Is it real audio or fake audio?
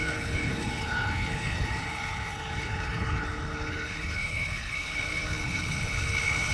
fake